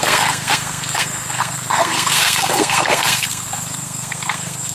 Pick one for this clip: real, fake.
fake